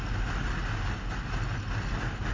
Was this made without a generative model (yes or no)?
yes